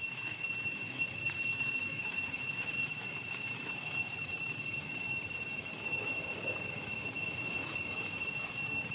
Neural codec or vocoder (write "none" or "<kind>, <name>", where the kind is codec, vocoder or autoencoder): autoencoder, DAC-VAE